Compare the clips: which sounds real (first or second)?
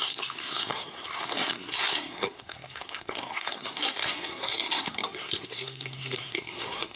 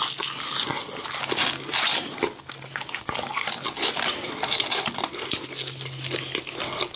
second